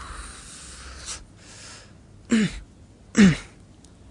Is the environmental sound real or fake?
real